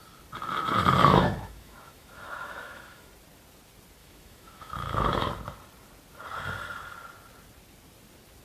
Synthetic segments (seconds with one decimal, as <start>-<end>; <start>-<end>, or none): 1.0-3.1; 4.0-5.3